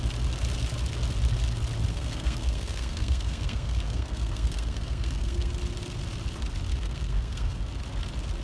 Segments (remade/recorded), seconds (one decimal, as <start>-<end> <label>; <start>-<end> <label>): 0.0-1.9 recorded; 1.9-5.5 remade; 5.5-6.7 recorded; 6.7-7.6 remade; 7.6-8.4 recorded